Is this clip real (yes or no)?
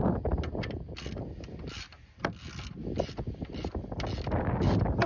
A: yes